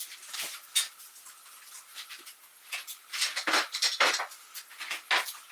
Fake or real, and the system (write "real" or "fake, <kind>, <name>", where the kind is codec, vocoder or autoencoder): real